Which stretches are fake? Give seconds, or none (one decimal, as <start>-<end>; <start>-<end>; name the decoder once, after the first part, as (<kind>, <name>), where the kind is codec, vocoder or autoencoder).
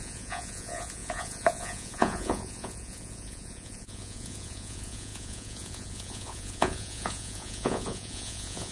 0.0-8.7 (vocoder, Vocos)